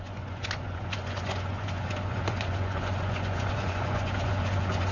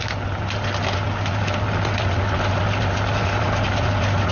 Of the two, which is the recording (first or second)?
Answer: second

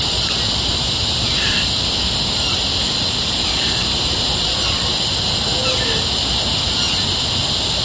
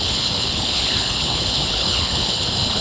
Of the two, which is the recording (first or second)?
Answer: first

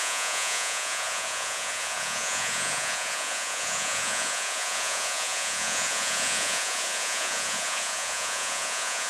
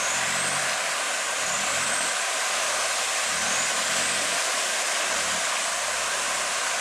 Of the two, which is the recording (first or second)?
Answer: second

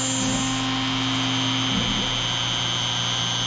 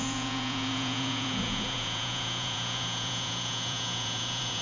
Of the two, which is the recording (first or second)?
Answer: first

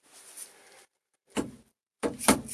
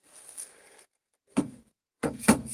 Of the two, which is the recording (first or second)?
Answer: first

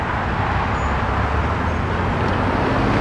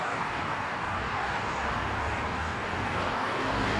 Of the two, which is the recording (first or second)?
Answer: first